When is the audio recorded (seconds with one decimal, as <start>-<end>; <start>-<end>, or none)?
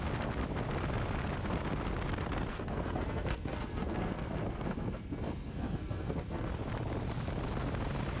0.0-2.5; 6.5-8.2